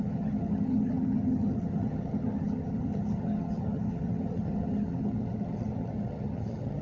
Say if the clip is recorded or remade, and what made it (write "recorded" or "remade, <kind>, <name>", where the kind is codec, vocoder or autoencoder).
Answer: remade, vocoder, HiFi-GAN